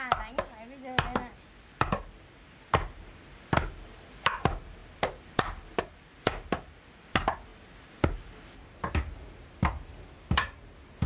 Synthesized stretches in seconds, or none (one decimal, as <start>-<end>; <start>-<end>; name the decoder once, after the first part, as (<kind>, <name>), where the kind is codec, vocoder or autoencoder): none